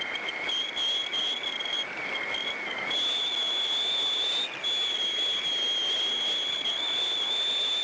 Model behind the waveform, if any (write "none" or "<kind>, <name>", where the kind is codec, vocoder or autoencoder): none